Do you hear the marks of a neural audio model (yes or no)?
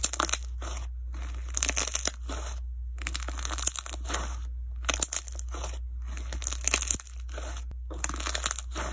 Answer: no